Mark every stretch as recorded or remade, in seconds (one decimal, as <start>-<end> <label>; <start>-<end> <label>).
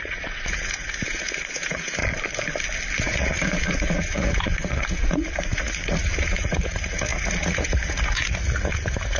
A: 0.0-2.0 remade; 2.0-3.0 recorded; 3.0-9.2 remade